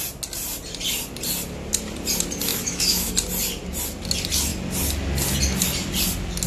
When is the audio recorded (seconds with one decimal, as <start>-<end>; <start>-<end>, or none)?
0.0-2.5; 3.1-6.5